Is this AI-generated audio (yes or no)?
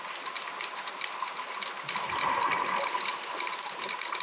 no